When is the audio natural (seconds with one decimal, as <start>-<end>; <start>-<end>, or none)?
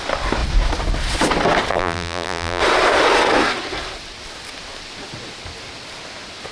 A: 0.0-1.7; 2.6-6.5